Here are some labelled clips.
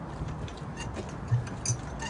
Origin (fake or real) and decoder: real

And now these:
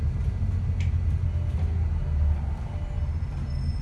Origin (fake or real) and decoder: real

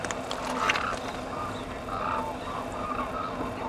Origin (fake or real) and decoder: real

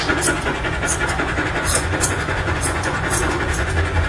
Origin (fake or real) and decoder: fake, vocoder, Vocos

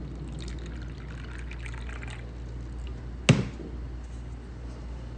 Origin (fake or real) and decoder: real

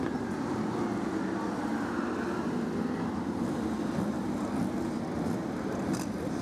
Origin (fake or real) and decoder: real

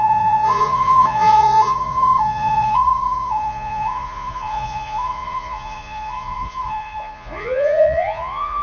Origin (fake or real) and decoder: fake, vocoder, Vocos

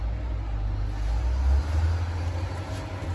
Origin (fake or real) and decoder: real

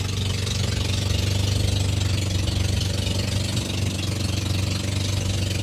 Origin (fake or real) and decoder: real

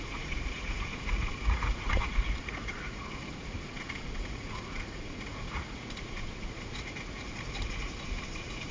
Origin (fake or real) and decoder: fake, vocoder, Vocos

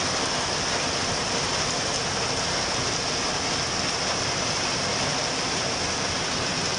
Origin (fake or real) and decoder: real